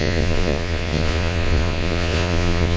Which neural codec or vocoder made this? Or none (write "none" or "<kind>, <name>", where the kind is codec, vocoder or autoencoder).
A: vocoder, Vocos